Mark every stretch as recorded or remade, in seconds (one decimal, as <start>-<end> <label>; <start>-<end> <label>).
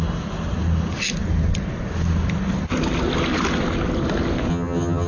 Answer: 0.0-4.5 recorded; 4.5-5.1 remade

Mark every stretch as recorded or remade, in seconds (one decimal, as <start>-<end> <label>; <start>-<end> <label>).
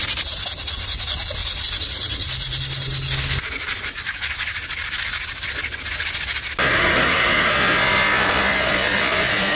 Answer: 0.0-6.7 recorded; 6.7-7.5 remade; 7.5-9.6 recorded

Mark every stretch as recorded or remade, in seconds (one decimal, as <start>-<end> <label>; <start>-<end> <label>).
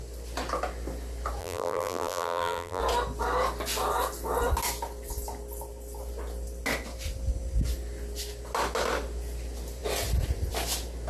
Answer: 0.0-1.4 recorded; 1.4-2.8 remade; 2.8-11.1 recorded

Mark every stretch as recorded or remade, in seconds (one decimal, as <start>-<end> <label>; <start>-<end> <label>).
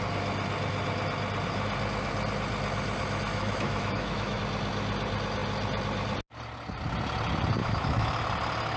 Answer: 0.0-3.3 recorded; 3.3-4.4 remade; 4.4-7.6 recorded; 7.6-8.1 remade; 8.1-8.8 recorded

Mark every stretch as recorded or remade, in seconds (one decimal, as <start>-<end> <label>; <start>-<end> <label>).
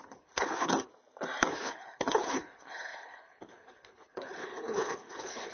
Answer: 0.0-0.9 remade; 0.9-1.5 recorded; 1.5-5.5 remade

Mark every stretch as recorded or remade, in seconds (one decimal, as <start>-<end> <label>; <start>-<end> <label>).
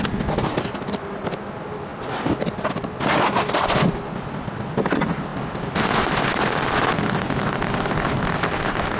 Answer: 0.0-9.0 recorded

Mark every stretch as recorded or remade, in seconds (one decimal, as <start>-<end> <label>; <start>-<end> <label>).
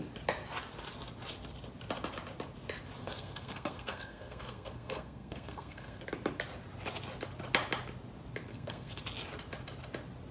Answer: 0.0-3.0 recorded; 3.0-6.0 remade; 6.0-8.5 recorded; 8.5-9.0 remade; 9.0-10.3 recorded